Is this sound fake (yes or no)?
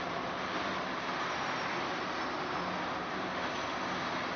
no